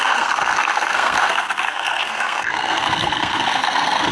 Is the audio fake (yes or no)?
yes